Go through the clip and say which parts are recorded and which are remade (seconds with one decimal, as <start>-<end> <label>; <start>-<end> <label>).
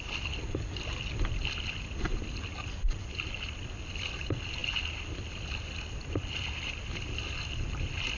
0.0-8.2 recorded